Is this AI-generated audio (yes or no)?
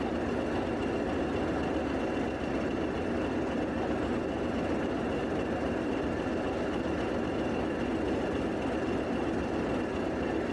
no